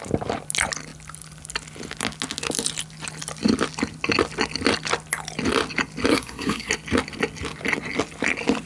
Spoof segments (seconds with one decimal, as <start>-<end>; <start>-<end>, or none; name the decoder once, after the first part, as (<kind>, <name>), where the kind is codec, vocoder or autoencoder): 6.1-6.7 (codec, SNAC)